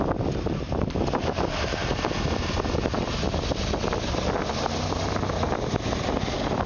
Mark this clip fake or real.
real